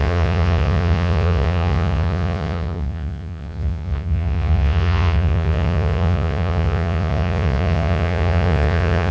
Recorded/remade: remade